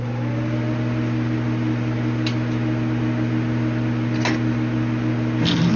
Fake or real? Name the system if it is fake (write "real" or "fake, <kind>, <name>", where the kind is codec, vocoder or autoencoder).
real